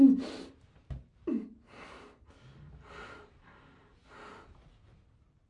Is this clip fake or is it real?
real